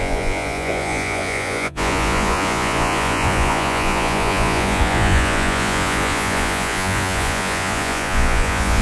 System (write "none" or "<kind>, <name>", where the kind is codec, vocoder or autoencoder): vocoder, Vocos